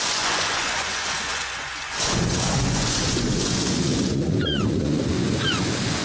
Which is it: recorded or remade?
remade